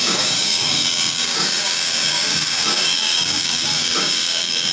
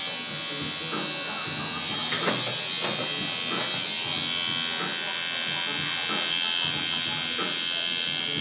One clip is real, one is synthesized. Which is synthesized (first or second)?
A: first